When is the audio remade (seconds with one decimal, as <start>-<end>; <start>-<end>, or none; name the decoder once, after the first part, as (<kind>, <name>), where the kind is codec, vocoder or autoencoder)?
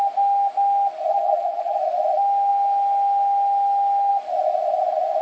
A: 1.1-1.8 (vocoder, BigVGAN v2)